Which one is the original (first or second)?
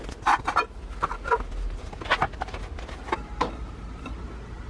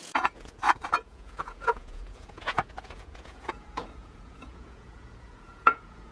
first